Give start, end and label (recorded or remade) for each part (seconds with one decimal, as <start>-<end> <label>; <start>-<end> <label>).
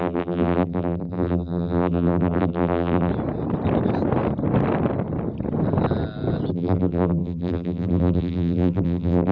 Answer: 0.0-3.1 remade; 3.1-6.5 recorded; 6.5-9.3 remade